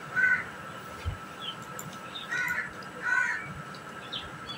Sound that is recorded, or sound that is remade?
recorded